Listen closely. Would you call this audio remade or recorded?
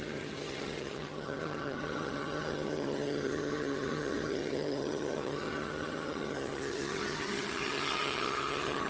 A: remade